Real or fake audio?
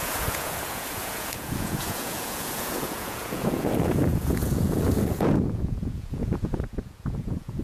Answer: fake